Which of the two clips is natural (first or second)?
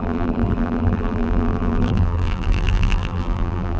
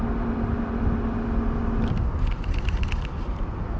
second